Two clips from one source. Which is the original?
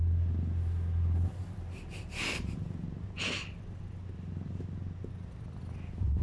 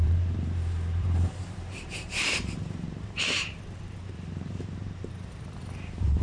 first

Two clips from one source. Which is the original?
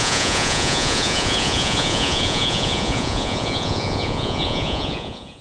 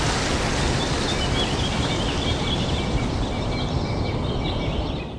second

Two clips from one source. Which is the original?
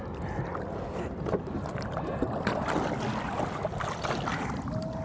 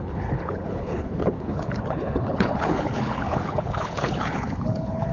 first